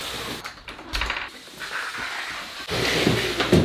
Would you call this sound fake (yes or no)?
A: no